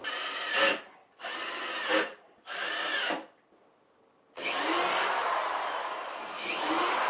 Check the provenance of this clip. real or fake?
real